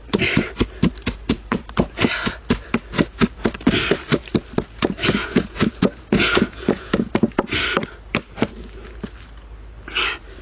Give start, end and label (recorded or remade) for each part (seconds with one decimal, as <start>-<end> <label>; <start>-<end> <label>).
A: 0.0-5.2 recorded; 5.2-7.1 remade; 7.1-10.4 recorded